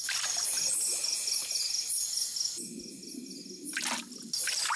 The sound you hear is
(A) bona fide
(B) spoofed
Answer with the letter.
A